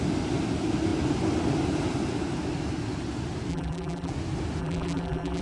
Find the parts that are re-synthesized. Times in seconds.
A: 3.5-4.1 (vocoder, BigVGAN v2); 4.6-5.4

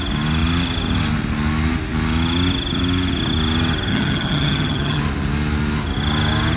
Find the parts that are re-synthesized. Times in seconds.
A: 3.9-5.0 (vocoder, HiFi-GAN)

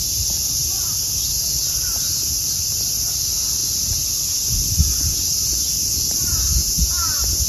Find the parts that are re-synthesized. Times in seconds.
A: 6.6-7.1 (vocoder, BigVGAN v2)

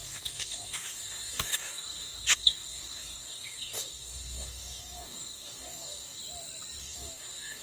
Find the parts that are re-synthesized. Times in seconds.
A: 0.0-6.2 (codec, DAC); 6.8-7.6

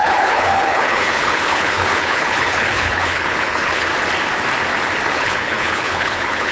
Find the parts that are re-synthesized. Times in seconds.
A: 0.0-3.9 (codec, HILCodec); 5.1-6.5

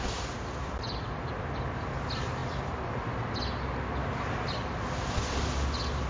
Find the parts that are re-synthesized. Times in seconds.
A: none

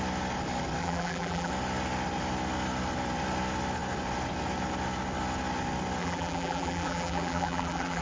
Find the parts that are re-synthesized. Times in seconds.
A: 0.8-1.5 (vocoder, BigVGAN v2); 6.0-8.0

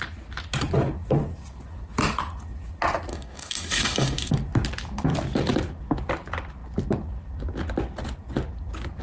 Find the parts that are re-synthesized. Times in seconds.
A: 3.1-4.3 (codec, DAC)